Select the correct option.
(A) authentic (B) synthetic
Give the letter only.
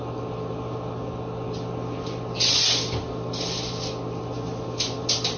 A